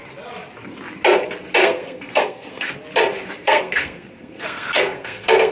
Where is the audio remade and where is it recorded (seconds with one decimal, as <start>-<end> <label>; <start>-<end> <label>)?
0.0-1.6 recorded; 1.6-2.7 remade; 2.7-3.4 recorded; 3.4-5.5 remade